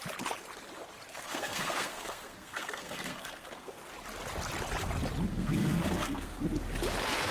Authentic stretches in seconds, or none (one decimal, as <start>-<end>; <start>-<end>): 0.0-1.1; 3.7-5.3; 6.4-7.3